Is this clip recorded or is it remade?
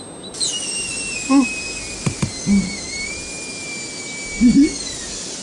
recorded